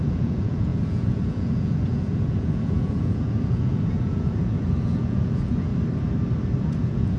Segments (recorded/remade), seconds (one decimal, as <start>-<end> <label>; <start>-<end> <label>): 0.0-5.7 remade; 5.7-6.6 recorded; 6.6-7.2 remade